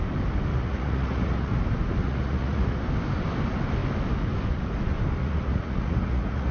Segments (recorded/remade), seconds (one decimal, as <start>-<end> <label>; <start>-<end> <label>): 0.0-0.5 recorded; 0.5-1.6 remade; 1.6-2.0 recorded; 2.0-2.8 remade; 2.8-5.2 recorded; 5.2-6.5 remade